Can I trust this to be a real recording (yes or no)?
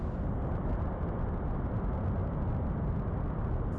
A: yes